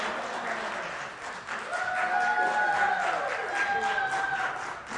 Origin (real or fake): real